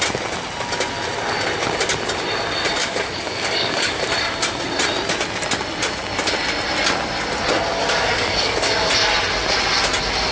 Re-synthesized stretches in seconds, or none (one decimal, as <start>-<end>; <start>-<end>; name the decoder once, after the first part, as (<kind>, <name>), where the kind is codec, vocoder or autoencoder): 2.8-4.0 (codec, DAC); 7.8-8.9